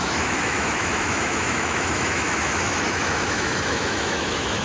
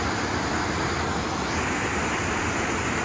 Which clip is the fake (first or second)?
first